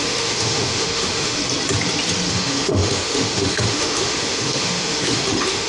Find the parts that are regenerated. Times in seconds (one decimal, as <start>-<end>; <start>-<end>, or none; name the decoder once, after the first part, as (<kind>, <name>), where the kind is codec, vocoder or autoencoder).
0.0-1.4 (autoencoder, DAC-VAE); 2.3-5.7